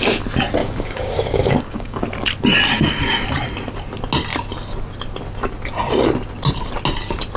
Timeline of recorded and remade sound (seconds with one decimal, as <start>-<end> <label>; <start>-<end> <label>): 0.0-0.6 recorded; 0.6-2.0 remade; 2.0-7.4 recorded